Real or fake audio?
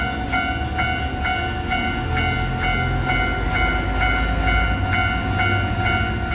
real